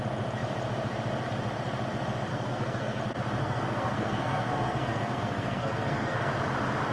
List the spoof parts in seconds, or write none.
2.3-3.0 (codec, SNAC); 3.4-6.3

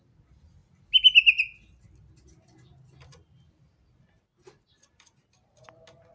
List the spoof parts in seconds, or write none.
none

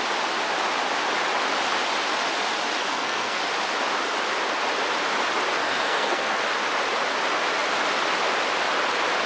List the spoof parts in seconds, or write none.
2.8-3.4 (codec, SNAC); 5.6-6.4

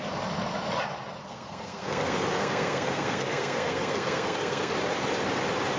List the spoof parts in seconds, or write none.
1.2-4.7 (codec, SNAC)

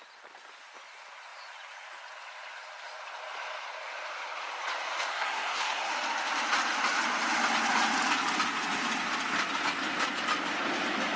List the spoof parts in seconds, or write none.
5.1-5.9 (codec, SNAC)